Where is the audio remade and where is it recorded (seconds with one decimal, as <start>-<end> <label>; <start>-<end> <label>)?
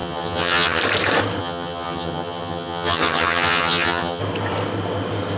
0.0-0.8 remade; 0.8-1.4 recorded; 1.4-4.2 remade; 4.2-5.4 recorded